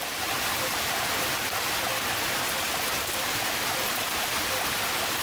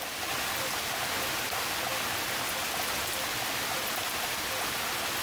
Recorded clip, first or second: second